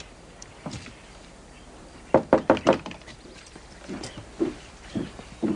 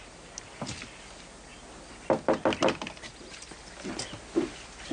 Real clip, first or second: second